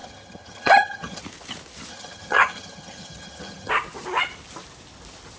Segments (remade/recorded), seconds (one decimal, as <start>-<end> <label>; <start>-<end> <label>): 0.0-1.2 remade; 1.2-1.9 recorded; 1.9-3.7 remade; 3.7-5.4 recorded